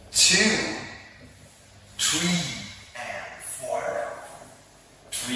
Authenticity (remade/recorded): recorded